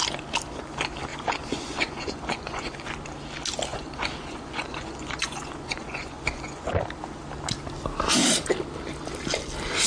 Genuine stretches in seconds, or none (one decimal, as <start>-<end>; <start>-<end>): 0.0-1.1; 2.8-3.7; 6.7-9.9